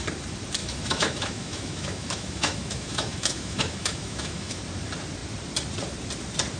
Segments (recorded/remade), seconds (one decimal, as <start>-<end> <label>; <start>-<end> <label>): 0.0-0.6 recorded; 0.6-4.6 remade; 4.6-6.6 recorded